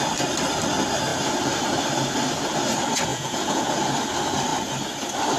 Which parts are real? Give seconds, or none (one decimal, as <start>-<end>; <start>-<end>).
0.0-3.1; 3.8-5.4